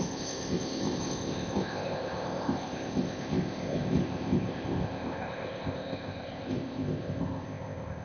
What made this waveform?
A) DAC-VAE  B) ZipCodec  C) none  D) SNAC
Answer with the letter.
B